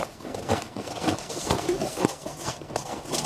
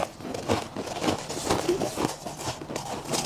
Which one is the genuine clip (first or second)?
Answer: second